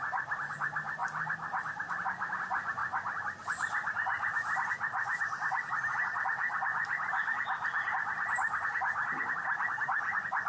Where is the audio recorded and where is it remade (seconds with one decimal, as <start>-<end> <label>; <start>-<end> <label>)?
0.0-10.5 recorded